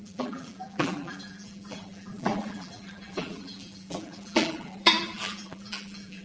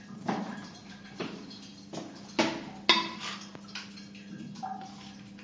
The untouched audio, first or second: second